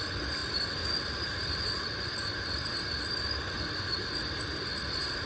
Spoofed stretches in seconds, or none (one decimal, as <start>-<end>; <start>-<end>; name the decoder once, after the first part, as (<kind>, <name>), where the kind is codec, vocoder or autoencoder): none